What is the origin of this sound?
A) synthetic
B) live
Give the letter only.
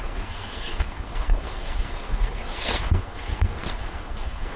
A